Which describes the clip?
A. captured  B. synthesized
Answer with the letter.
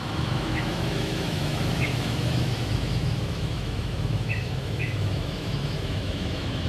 B